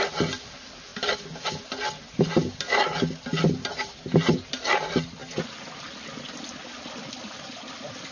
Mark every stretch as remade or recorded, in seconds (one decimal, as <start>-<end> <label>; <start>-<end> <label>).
0.0-8.1 recorded